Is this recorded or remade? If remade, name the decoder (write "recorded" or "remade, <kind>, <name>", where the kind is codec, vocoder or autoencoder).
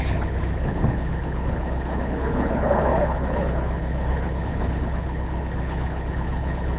remade, codec, HILCodec